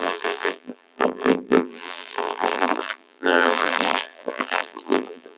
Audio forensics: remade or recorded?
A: remade